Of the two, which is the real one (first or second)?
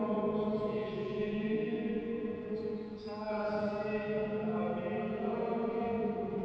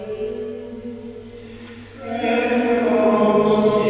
second